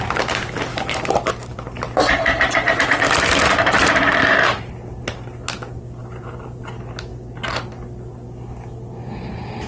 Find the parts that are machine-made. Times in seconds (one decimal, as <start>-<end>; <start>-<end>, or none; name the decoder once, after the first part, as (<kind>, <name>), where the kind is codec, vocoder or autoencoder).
0.7-4.6 (vocoder, BigVGAN v2); 6.0-6.6